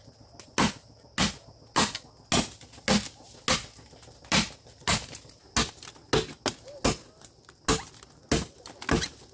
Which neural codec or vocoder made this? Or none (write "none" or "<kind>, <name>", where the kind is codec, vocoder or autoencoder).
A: none